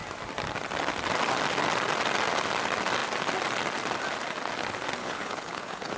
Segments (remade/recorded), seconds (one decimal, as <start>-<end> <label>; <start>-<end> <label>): 0.0-5.0 recorded; 5.0-6.0 remade